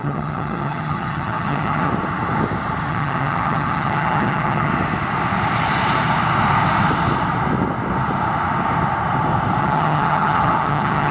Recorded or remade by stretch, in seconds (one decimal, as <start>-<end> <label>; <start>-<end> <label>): 0.0-1.9 remade; 1.9-2.9 recorded; 2.9-4.7 remade; 4.7-9.6 recorded; 9.6-11.1 remade